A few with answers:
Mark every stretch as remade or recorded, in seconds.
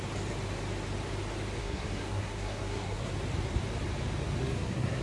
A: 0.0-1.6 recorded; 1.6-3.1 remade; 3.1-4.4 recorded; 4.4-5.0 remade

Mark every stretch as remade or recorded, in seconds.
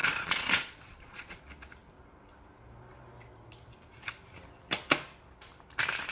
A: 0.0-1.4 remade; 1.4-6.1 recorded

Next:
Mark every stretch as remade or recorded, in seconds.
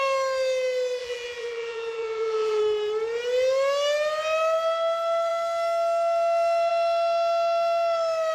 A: 0.0-1.0 recorded; 1.0-2.6 remade; 2.6-8.3 recorded